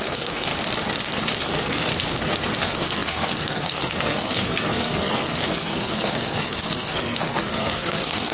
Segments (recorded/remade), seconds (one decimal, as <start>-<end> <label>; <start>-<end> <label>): 0.0-0.5 remade; 0.5-1.4 recorded; 1.4-1.9 remade; 1.9-2.6 recorded; 2.6-8.3 remade